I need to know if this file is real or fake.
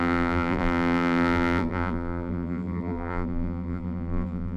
fake